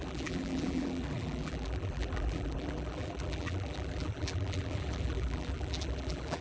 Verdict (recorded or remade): remade